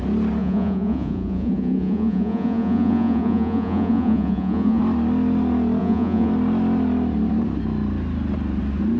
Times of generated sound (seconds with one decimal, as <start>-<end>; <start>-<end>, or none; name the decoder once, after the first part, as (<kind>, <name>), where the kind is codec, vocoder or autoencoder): 0.4-4.8 (vocoder, Vocos); 5.8-6.3